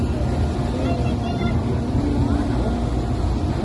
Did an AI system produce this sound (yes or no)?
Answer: no